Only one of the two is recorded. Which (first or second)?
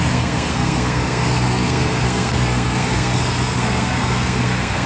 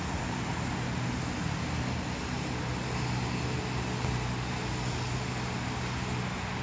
second